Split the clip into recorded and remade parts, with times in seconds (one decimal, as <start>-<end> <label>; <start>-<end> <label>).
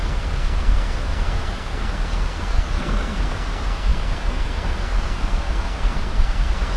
0.0-6.8 remade